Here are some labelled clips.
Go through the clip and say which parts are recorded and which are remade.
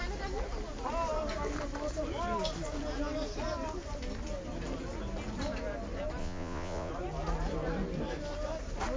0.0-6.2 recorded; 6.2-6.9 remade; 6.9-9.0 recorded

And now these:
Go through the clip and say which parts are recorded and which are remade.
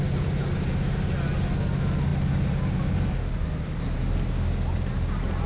0.0-5.5 recorded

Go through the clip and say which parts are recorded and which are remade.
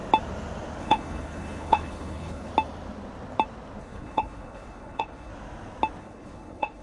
0.0-0.8 recorded; 0.8-2.5 remade; 2.5-3.8 recorded; 3.8-5.3 remade; 5.3-6.0 recorded; 6.0-6.8 remade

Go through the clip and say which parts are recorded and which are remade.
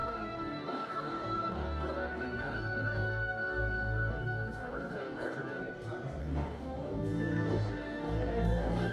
0.0-5.6 remade; 5.6-6.2 recorded; 6.2-8.9 remade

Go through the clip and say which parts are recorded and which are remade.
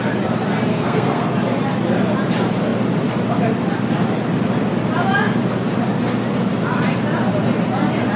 0.0-0.7 recorded; 0.7-1.3 remade; 1.3-8.2 recorded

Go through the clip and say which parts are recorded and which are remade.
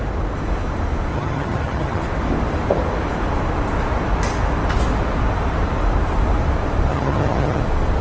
0.0-1.1 recorded; 1.1-2.0 remade; 2.0-6.9 recorded; 6.9-7.6 remade; 7.6-8.0 recorded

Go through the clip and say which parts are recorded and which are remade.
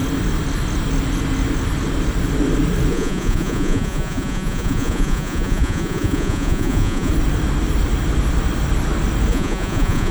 0.0-2.9 recorded; 2.9-7.1 remade; 7.1-9.3 recorded; 9.3-10.1 remade